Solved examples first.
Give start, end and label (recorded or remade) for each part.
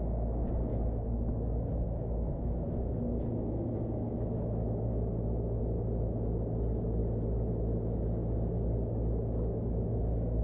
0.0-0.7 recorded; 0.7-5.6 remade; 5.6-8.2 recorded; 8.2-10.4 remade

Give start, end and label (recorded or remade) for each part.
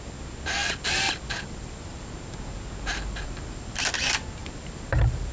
0.0-0.6 recorded; 0.6-2.1 remade; 2.1-2.9 recorded; 2.9-3.8 remade; 3.8-4.4 recorded; 4.4-5.3 remade